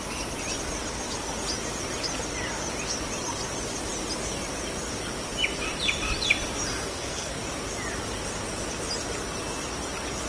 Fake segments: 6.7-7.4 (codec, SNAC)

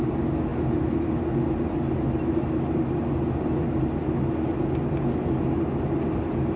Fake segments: none

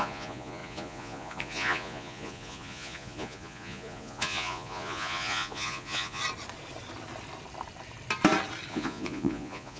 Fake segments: 0.0-6.2 (vocoder, Vocos); 8.7-9.8

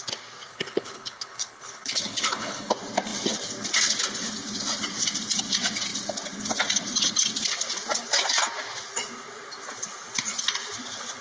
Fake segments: 0.5-2.7 (codec, HILCodec)

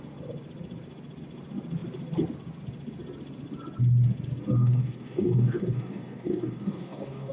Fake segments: 4.6-7.3 (codec, DAC)

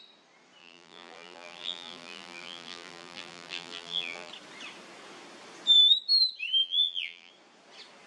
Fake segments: 0.6-4.3 (vocoder, BigVGAN v2); 6.6-7.3

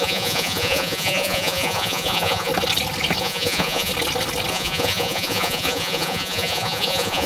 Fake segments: 0.0-2.5 (vocoder, Vocos); 3.2-3.9; 4.5-7.3

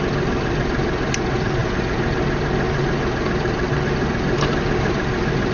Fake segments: none